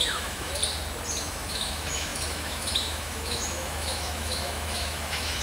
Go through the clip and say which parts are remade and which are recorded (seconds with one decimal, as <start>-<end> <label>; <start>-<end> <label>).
0.0-0.6 remade; 0.6-1.2 recorded; 1.2-5.4 remade